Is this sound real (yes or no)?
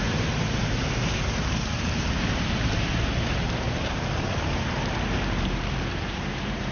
no